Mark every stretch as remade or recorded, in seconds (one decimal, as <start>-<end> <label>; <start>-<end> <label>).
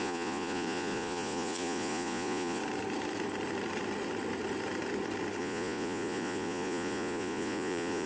0.0-2.6 remade; 2.6-5.4 recorded; 5.4-8.1 remade